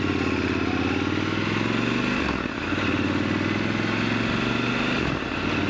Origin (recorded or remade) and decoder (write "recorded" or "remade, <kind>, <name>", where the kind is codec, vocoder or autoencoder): recorded